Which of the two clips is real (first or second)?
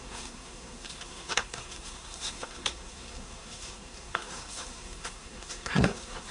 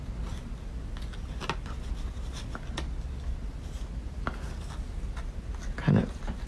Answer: second